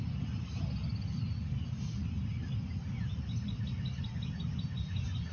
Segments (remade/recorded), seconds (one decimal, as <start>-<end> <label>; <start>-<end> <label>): 0.0-5.3 recorded